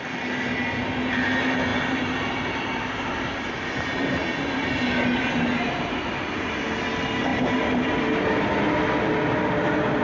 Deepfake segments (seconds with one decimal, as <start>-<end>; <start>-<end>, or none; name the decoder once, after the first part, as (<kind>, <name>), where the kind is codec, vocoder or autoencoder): 7.3-8.0 (vocoder, BigVGAN v2)